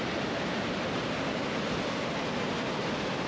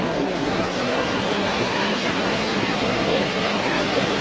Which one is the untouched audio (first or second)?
first